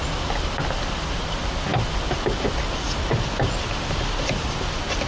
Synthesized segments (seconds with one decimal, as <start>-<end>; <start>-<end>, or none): none